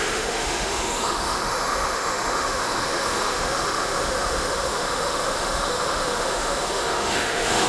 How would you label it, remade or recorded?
remade